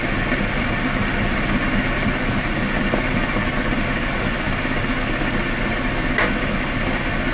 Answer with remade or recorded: recorded